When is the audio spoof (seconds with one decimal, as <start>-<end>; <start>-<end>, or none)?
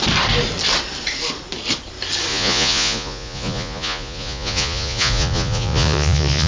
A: 2.3-6.5